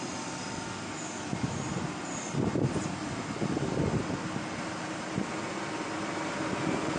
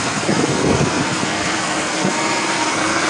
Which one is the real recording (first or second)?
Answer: first